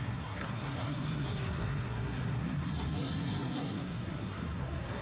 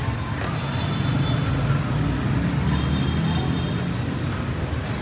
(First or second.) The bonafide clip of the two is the second